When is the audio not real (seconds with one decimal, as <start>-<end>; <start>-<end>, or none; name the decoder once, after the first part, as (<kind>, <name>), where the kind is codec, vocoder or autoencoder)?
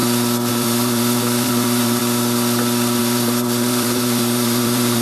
0.5-2.0 (vocoder, BigVGAN v2); 3.0-5.0